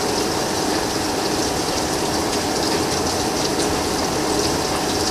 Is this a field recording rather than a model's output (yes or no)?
no